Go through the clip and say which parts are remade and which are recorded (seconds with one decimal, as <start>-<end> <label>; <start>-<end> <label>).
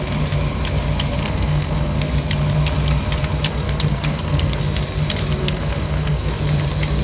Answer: 0.0-1.2 recorded; 1.2-2.1 remade; 2.1-3.5 recorded; 3.5-4.6 remade; 4.6-5.4 recorded; 5.4-6.3 remade; 6.3-7.0 recorded